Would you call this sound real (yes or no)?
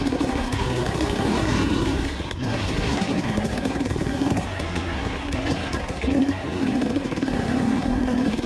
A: no